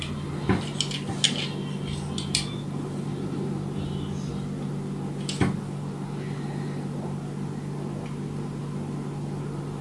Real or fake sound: real